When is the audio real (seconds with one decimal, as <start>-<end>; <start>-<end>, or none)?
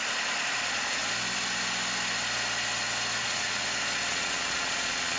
0.0-0.6; 1.0-3.2; 3.6-4.1